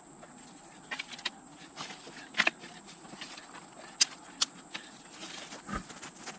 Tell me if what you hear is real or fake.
real